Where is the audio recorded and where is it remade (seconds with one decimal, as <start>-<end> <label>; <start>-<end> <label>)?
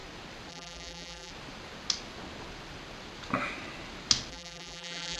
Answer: 0.0-0.5 recorded; 0.5-1.3 remade; 1.3-4.3 recorded; 4.3-5.2 remade